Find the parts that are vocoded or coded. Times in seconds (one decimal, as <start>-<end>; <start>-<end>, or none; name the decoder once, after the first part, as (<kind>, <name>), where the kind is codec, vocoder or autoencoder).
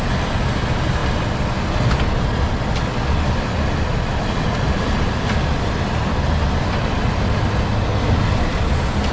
none